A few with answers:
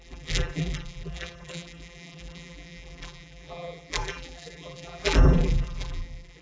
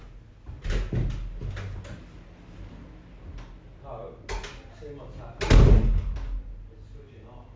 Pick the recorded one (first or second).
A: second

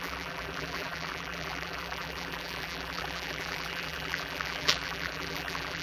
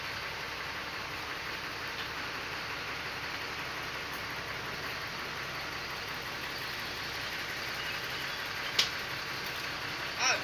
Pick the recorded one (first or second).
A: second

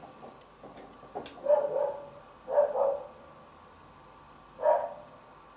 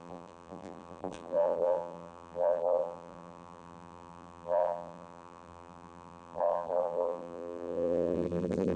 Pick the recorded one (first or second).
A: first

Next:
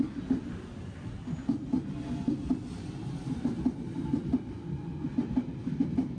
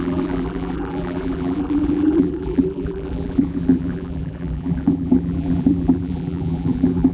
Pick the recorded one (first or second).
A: first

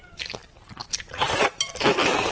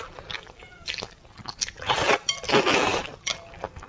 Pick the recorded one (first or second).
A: second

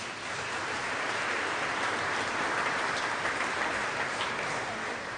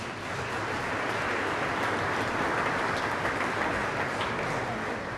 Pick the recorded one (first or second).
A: second